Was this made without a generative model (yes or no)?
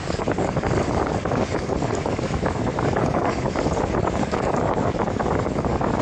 no